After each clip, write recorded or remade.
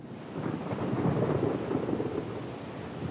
recorded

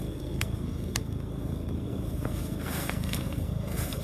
remade